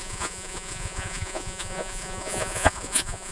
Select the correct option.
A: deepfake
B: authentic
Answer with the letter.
A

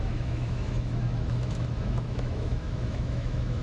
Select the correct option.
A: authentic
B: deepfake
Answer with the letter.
B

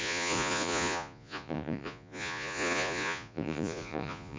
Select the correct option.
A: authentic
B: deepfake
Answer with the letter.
B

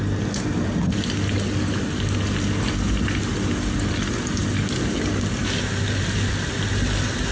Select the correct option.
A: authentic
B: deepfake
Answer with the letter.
A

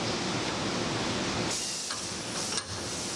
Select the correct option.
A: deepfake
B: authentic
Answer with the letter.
B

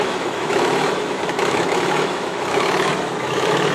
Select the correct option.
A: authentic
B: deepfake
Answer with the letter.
B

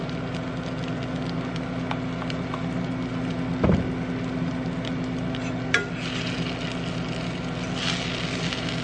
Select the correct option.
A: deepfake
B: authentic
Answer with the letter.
B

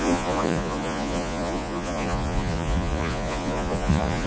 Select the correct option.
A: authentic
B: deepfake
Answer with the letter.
B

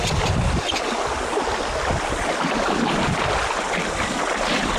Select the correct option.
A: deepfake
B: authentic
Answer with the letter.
B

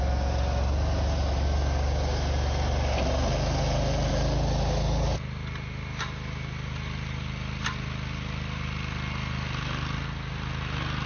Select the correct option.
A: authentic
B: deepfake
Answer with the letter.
A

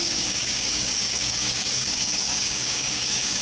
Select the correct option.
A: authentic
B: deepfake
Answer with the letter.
B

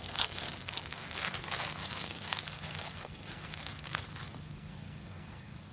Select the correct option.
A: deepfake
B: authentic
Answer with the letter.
A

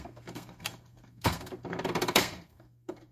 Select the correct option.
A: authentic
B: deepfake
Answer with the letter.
B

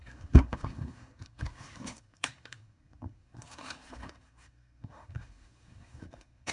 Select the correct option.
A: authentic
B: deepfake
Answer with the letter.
B